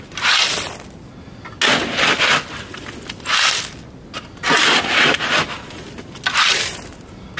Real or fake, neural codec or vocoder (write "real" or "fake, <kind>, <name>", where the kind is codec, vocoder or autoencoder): real